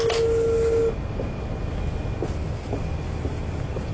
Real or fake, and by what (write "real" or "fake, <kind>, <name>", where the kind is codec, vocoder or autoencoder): real